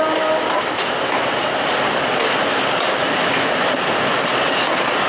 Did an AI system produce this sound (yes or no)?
no